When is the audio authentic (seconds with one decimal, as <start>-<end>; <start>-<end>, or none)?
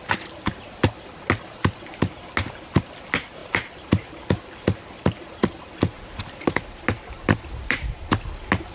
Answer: 0.0-8.7